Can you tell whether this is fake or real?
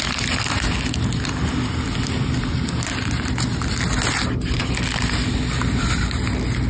real